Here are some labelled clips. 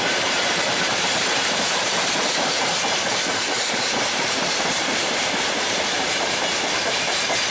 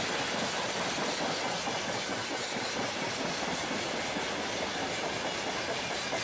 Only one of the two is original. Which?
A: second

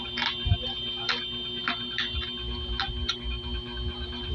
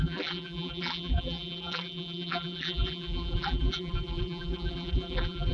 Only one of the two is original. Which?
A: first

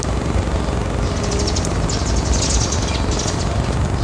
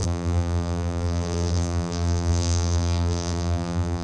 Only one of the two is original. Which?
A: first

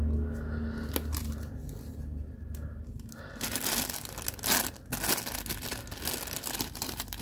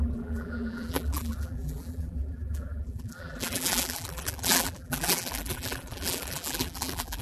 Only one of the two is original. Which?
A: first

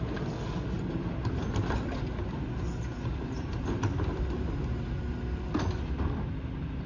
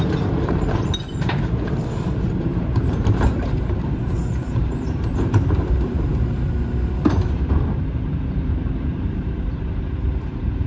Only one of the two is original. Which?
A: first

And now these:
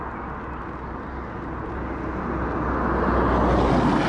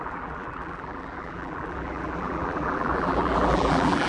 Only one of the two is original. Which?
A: first